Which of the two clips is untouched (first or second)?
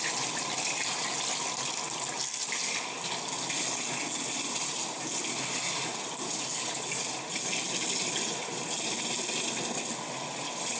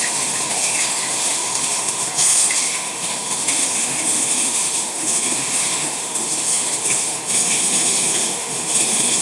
first